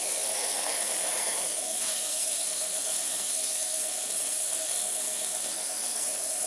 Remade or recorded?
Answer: remade